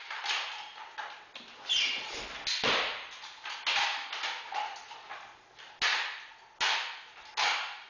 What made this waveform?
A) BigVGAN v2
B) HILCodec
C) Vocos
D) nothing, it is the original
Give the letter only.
D